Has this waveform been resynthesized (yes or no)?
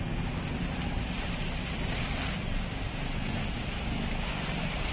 no